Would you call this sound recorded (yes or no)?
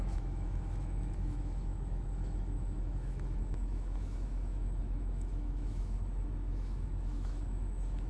no